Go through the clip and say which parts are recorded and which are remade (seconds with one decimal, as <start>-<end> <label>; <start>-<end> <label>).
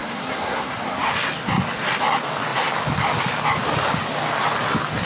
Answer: 0.0-1.1 remade; 1.1-5.1 recorded